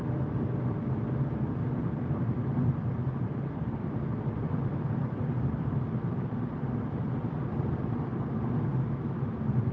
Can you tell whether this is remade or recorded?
remade